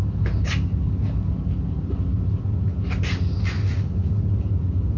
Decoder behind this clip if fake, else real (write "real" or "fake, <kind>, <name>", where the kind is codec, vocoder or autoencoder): real